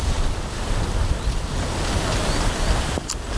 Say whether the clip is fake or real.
real